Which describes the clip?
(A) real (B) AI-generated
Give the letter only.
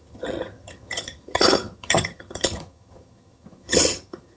B